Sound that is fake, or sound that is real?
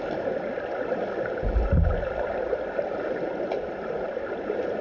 real